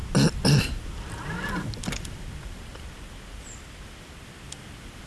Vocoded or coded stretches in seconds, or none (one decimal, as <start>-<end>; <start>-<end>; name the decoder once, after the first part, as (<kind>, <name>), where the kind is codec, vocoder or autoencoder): none